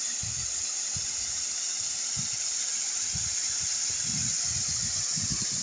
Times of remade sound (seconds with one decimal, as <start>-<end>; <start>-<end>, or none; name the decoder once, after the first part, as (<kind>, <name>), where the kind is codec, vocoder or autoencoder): none